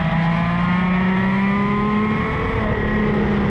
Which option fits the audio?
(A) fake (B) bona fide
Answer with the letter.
B